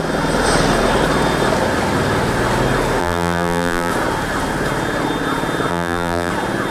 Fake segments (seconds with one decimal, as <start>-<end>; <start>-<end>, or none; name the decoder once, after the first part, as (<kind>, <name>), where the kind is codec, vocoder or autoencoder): 3.0-3.9 (vocoder, BigVGAN v2); 5.7-6.3